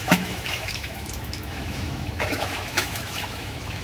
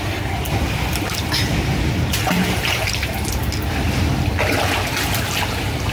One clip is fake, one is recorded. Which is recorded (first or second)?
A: second